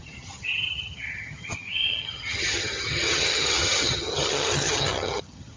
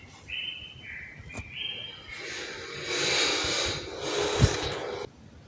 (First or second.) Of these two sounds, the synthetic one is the first